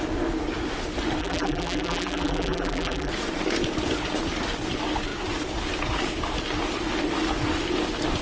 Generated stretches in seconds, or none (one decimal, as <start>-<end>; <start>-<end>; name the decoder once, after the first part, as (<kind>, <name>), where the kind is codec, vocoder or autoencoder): 1.2-3.1 (vocoder, BigVGAN v2)